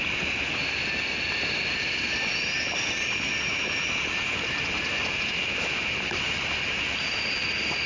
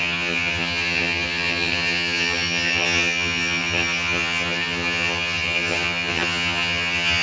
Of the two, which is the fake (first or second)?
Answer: second